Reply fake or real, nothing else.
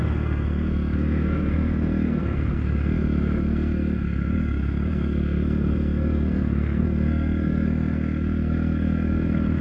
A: fake